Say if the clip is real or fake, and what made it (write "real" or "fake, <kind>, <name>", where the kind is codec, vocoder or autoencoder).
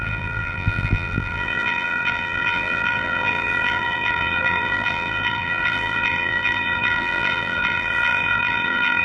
fake, vocoder, BigVGAN v2